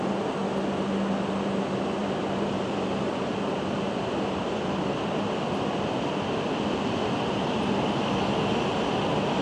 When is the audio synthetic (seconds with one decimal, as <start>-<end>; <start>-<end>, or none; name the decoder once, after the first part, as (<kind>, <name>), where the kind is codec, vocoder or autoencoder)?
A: 2.0-6.9 (vocoder, BigVGAN v2)